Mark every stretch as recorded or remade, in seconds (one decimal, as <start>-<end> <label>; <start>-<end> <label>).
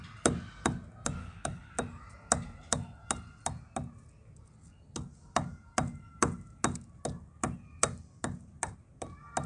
0.0-1.2 recorded; 1.2-1.7 remade; 1.7-9.5 recorded